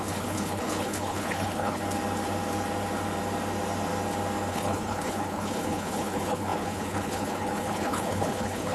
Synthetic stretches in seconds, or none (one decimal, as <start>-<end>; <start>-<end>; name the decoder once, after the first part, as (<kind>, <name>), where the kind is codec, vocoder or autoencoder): 0.0-1.8 (codec, HILCodec); 4.5-8.7